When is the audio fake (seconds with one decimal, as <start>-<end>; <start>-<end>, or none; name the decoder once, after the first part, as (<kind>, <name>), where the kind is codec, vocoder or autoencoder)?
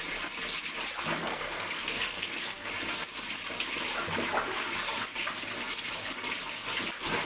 1.2-2.7 (codec, SNAC)